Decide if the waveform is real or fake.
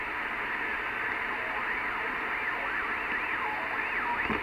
real